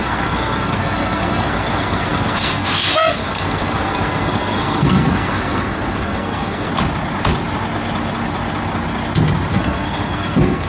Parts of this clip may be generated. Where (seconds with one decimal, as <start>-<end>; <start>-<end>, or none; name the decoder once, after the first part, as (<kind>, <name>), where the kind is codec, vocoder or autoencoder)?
0.0-6.7 (codec, SNAC); 9.5-10.7